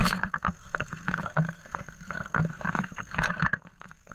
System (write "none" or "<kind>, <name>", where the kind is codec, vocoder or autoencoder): codec, SNAC